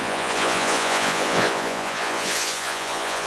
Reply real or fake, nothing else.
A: fake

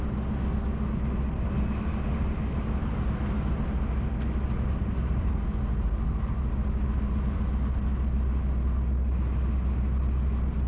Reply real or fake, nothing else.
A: real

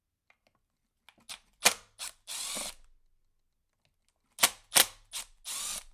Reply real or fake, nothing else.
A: real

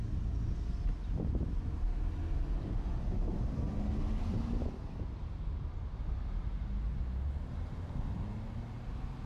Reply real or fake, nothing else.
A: real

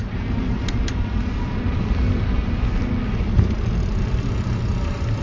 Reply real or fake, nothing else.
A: real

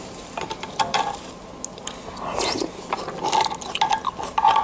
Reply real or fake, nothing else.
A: real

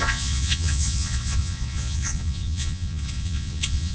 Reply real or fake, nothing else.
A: fake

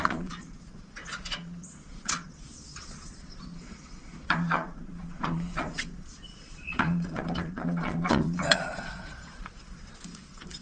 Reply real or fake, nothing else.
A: fake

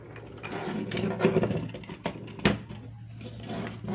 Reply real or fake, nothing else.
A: real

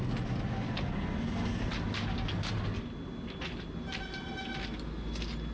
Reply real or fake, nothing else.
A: real